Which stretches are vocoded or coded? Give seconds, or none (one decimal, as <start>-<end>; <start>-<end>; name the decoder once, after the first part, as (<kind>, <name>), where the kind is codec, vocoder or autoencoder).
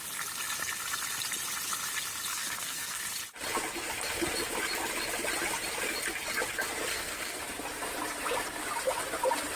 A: 2.3-3.0 (codec, SNAC); 6.9-7.4